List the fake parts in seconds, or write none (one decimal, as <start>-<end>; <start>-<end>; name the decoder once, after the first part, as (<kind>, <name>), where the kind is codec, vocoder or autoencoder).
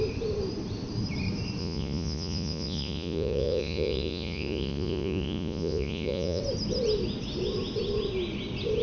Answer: 1.6-6.4 (vocoder, Vocos)